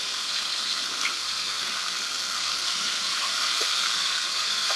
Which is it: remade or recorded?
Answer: remade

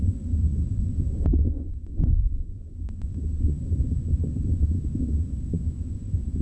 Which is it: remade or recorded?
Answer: remade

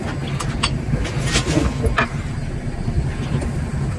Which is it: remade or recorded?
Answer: recorded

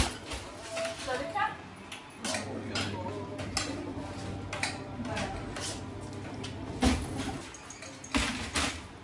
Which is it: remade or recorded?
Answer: recorded